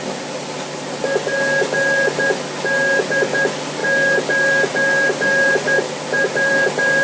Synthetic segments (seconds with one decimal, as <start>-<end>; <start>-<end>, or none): none